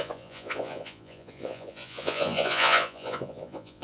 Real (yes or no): no